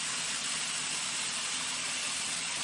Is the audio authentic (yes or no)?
yes